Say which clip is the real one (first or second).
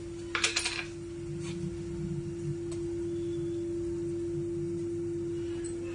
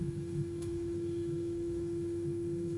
first